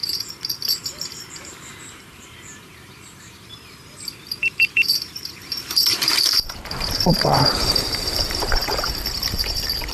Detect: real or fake fake